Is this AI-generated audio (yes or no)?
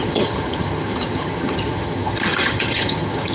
yes